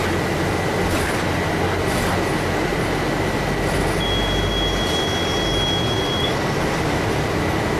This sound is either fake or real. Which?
real